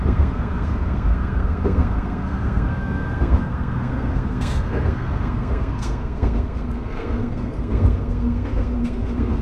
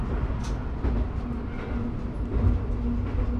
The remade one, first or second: first